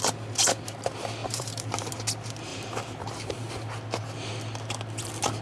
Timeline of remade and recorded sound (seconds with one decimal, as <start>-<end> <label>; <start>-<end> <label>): 0.0-1.2 recorded; 1.2-1.9 remade; 1.9-2.5 recorded; 2.5-3.5 remade; 3.5-5.4 recorded